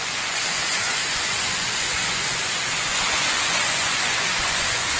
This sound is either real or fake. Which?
fake